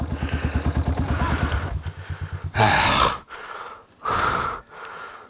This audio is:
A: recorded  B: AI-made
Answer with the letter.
A